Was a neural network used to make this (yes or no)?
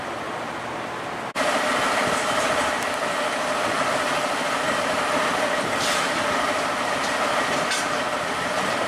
no